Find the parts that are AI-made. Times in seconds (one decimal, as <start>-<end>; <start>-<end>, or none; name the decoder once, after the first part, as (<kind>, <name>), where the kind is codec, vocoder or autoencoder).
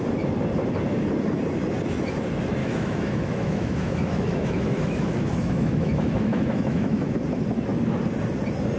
2.6-7.1 (autoencoder, DAC-VAE)